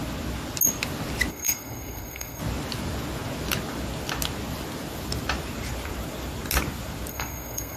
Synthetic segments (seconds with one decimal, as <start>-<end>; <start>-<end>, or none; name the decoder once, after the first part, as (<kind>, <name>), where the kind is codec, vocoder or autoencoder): 1.3-2.4 (codec, SNAC); 7.1-7.8